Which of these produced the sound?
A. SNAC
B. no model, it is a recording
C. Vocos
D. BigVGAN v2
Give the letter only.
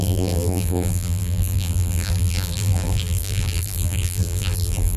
D